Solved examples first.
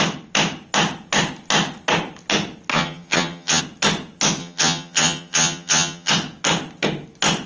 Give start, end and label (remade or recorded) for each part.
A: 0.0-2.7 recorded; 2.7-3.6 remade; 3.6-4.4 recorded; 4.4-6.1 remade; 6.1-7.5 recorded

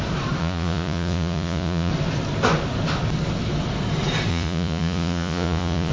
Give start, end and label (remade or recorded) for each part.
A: 0.0-0.4 recorded; 0.4-1.9 remade; 1.9-4.3 recorded; 4.3-5.9 remade

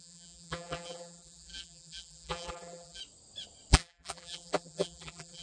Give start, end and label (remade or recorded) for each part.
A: 0.0-3.0 remade; 3.0-3.7 recorded; 3.7-5.4 remade

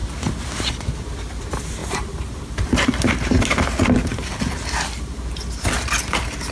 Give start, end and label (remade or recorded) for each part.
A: 0.0-1.8 recorded; 1.8-3.3 remade; 3.3-6.5 recorded